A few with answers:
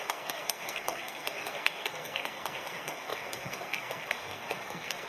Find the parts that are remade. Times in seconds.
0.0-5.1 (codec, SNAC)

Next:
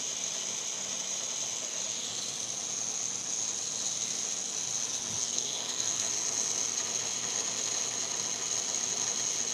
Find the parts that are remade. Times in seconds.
5.2-6.1 (codec, SNAC)

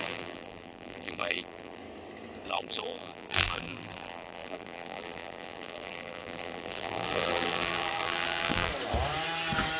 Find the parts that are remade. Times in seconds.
0.0-1.8 (vocoder, BigVGAN v2); 2.5-8.7

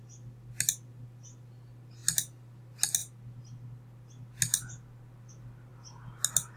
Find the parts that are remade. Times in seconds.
none

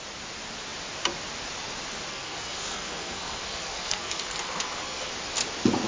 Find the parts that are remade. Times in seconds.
2.1-5.1 (codec, SNAC)